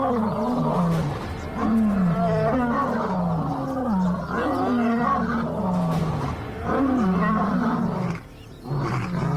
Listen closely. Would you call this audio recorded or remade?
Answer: recorded